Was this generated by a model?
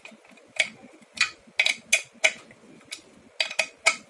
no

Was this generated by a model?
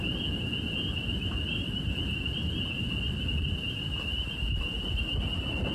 no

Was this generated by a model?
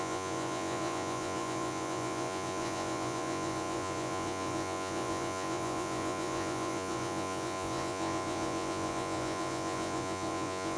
yes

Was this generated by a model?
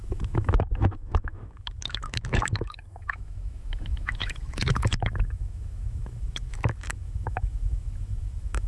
yes